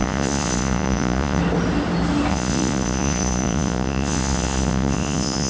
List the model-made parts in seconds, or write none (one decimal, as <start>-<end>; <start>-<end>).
0.0-1.4; 2.3-5.5